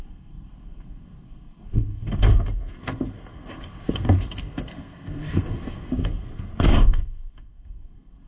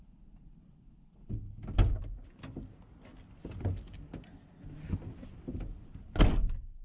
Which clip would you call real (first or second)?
second